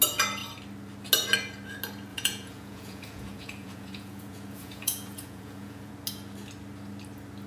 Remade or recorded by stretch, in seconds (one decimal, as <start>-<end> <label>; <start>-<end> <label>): 0.0-2.1 recorded; 2.1-5.9 remade; 5.9-7.5 recorded